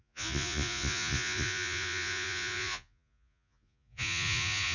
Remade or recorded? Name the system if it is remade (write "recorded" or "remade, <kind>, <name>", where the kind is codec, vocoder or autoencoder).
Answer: remade, vocoder, Vocos